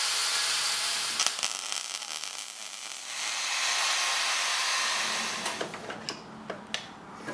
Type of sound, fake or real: real